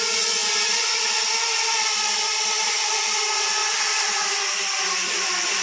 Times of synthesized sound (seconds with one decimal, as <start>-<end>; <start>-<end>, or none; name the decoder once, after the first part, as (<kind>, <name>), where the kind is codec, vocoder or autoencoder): 0.4-2.5 (vocoder, BigVGAN v2)